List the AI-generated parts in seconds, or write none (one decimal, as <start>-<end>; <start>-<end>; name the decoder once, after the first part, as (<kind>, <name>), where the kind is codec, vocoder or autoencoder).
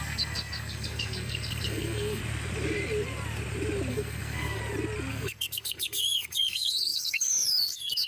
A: 0.0-2.2 (codec, SNAC); 3.9-4.6; 5.1-8.1